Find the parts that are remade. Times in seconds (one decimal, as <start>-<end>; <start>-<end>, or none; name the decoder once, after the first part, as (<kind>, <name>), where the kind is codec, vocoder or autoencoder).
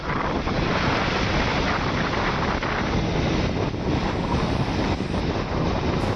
0.7-1.3 (vocoder, BigVGAN v2)